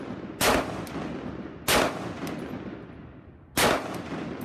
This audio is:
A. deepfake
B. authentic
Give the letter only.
B